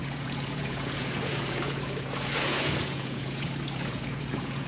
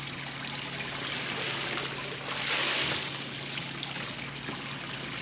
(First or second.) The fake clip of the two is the first